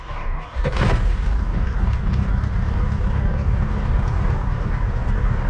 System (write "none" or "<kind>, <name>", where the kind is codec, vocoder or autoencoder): codec, DAC